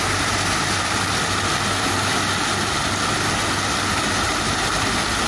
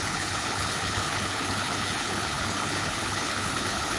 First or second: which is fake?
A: second